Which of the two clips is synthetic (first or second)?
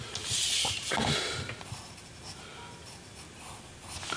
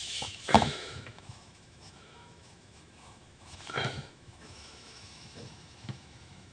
second